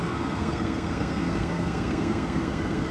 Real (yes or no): no